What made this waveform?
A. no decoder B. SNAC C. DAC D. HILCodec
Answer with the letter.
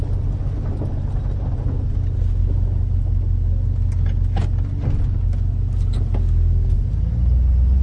A